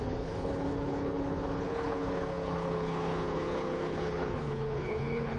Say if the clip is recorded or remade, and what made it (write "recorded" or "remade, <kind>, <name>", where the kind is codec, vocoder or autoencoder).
remade, codec, HILCodec